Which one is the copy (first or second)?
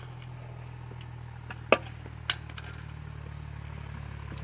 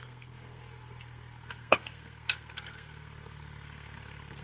second